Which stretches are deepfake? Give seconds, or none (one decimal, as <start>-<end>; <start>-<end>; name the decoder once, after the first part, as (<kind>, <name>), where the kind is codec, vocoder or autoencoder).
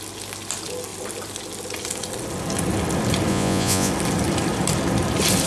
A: 3.3-3.9 (vocoder, Vocos)